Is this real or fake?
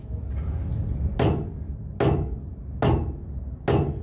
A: real